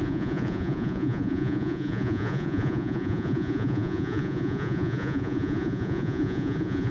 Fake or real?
fake